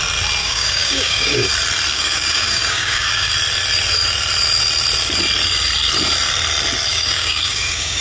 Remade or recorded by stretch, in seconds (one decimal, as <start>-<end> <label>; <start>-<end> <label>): 0.0-0.4 recorded; 0.4-1.5 remade; 1.5-1.9 recorded; 1.9-3.3 remade; 3.3-6.9 recorded; 6.9-8.0 remade